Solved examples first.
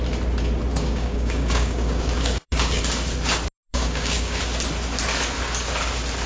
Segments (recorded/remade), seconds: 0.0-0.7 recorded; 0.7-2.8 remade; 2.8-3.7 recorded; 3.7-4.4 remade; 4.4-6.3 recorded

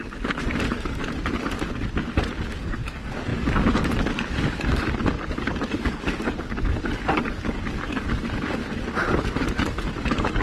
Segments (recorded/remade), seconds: 0.0-1.0 remade; 1.0-2.6 recorded; 2.6-8.6 remade; 8.6-9.2 recorded; 9.2-10.4 remade

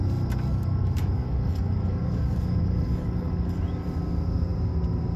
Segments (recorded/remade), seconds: 0.0-0.5 recorded; 0.5-3.6 remade; 3.6-5.2 recorded